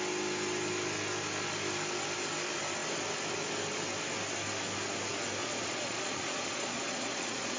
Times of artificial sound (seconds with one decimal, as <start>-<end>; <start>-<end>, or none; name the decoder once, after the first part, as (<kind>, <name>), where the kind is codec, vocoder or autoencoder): 5.4-7.6 (vocoder, Vocos)